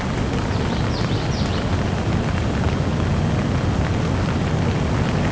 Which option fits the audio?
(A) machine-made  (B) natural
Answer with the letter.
B